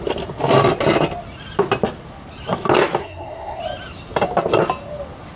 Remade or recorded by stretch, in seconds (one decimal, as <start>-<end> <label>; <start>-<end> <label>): 0.0-3.0 recorded; 3.0-3.6 remade; 3.6-5.4 recorded